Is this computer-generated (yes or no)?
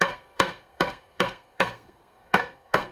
yes